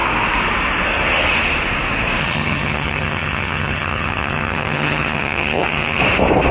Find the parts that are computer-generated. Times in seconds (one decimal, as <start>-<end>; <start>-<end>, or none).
2.2-6.0